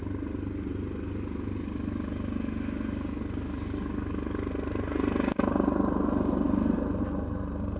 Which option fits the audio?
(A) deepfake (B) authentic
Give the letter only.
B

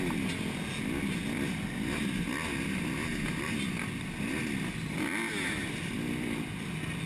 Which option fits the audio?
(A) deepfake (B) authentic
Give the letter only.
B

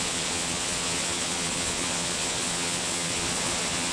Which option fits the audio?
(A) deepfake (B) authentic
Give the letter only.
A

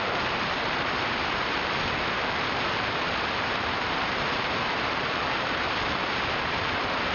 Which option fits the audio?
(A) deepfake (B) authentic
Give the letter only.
A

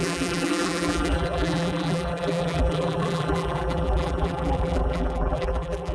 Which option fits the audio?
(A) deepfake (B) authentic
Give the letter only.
A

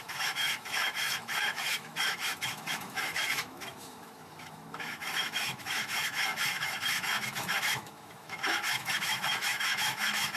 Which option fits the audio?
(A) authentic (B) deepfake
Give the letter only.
B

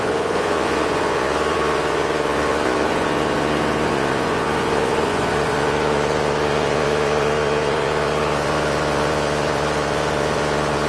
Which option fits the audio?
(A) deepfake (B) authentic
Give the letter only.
A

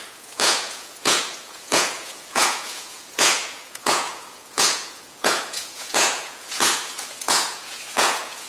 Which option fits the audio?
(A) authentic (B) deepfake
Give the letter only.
B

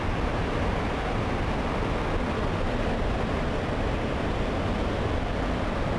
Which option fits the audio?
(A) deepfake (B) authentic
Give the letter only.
B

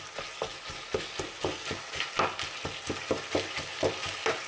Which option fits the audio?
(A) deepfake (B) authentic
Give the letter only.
B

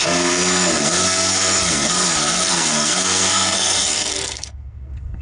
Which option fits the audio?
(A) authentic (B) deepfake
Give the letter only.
B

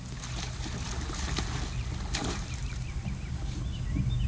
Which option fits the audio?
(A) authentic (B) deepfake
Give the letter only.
A